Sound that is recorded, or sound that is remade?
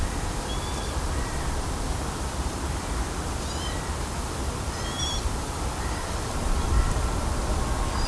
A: remade